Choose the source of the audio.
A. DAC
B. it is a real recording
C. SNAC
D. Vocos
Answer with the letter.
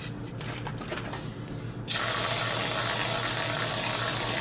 B